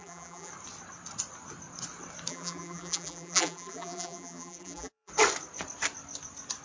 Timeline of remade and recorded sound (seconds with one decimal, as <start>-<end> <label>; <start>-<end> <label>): 0.0-0.5 remade; 0.5-2.3 recorded; 2.3-5.1 remade; 5.1-6.6 recorded